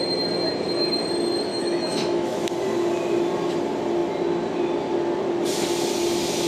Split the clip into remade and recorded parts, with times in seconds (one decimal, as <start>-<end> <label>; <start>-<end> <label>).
0.0-1.5 recorded; 1.5-2.5 remade; 2.5-6.5 recorded

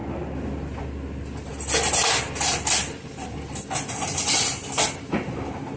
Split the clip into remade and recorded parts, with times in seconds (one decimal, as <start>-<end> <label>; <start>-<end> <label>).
0.0-5.8 recorded

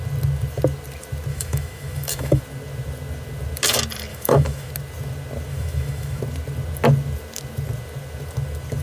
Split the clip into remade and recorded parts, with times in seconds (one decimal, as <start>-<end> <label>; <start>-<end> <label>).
0.0-1.3 recorded; 1.3-2.4 remade; 2.4-4.1 recorded; 4.1-4.7 remade; 4.7-5.5 recorded; 5.5-6.2 remade; 6.2-8.8 recorded

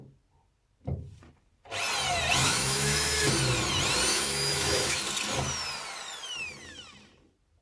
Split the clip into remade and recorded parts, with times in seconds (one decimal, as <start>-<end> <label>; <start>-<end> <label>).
0.0-2.4 recorded; 2.4-3.3 remade; 3.3-4.1 recorded; 4.1-5.0 remade; 5.0-7.6 recorded

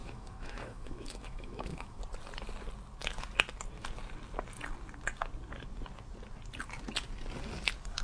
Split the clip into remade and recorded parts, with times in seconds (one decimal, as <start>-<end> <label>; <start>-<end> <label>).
0.0-2.0 remade; 2.0-8.0 recorded

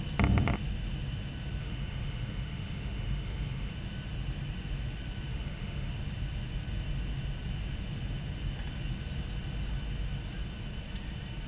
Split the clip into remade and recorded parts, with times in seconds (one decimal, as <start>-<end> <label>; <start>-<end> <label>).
0.0-1.6 recorded; 1.6-3.7 remade; 3.7-5.3 recorded; 5.3-5.9 remade; 5.9-11.5 recorded

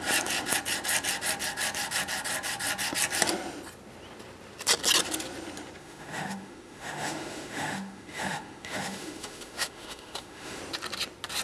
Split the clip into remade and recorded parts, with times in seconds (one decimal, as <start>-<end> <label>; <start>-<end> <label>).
0.0-5.8 recorded; 5.8-10.6 remade; 10.6-11.4 recorded